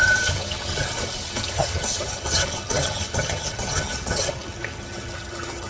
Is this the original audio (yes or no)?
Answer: no